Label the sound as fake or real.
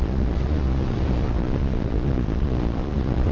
fake